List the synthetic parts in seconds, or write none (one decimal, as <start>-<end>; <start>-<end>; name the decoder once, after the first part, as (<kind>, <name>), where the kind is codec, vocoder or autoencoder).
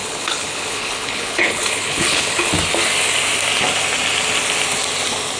0.0-2.5 (codec, HILCodec)